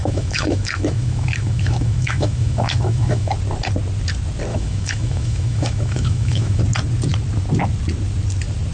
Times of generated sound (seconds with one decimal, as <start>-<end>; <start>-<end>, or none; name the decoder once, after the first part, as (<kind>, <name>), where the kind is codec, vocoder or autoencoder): 0.0-3.3 (autoencoder, DAC-VAE); 4.5-6.6